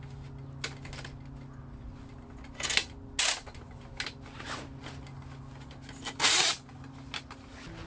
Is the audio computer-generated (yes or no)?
no